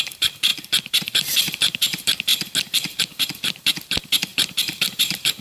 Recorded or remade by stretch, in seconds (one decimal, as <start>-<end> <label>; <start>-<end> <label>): 0.0-2.3 remade; 2.3-3.0 recorded; 3.0-5.4 remade